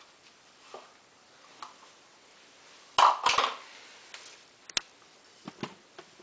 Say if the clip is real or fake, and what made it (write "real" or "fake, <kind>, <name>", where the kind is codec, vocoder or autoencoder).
real